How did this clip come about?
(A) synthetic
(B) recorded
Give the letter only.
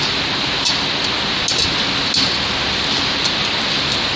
B